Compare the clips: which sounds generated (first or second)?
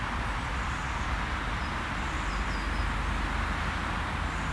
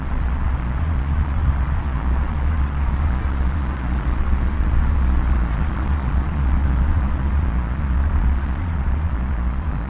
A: second